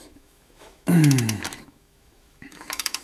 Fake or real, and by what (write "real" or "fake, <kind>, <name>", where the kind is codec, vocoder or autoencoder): fake, autoencoder, DAC-VAE